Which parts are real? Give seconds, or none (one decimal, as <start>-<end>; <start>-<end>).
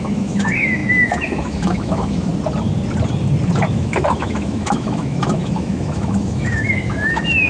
2.3-3.7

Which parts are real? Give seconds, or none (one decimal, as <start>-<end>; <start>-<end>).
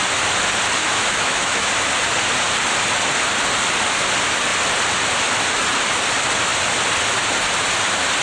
0.0-0.8; 1.7-8.2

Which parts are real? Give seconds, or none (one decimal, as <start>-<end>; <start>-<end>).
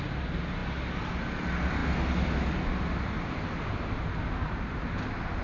0.0-5.4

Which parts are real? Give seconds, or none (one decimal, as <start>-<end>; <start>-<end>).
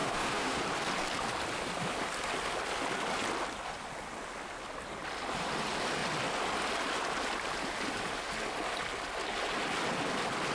0.6-10.5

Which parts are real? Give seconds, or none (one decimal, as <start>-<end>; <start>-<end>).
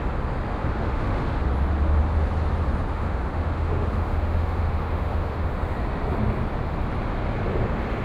0.0-0.6; 1.4-2.9; 5.5-8.0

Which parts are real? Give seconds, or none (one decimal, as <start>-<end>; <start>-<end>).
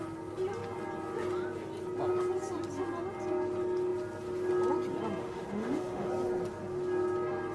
0.0-5.2; 6.1-7.5